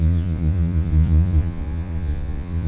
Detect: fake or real fake